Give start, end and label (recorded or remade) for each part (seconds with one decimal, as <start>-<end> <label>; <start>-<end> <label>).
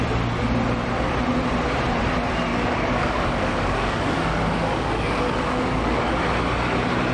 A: 0.0-2.5 recorded; 2.5-6.2 remade; 6.2-7.1 recorded